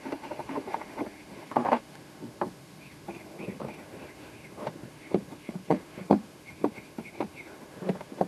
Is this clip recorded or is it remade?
remade